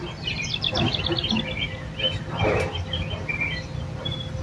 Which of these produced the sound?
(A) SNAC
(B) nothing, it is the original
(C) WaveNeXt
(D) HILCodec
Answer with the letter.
B